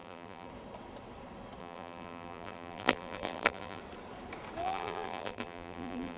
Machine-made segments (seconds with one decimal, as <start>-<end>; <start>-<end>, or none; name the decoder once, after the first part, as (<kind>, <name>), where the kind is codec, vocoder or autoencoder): 0.0-0.5 (vocoder, BigVGAN v2); 1.6-3.8; 4.6-6.2